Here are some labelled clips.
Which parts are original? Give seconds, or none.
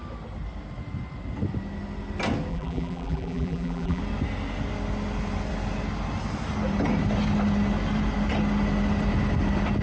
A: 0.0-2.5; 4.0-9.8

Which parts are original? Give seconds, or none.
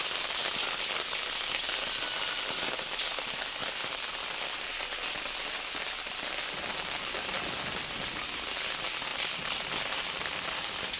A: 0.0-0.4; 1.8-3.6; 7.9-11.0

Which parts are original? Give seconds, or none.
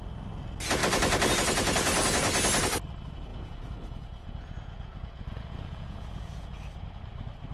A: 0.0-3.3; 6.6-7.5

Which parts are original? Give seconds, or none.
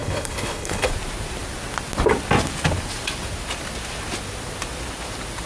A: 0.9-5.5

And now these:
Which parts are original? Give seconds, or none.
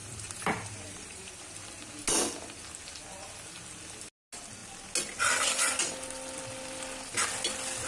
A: 1.3-7.9